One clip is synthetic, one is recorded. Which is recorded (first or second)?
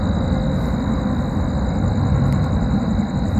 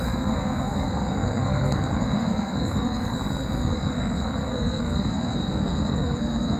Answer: first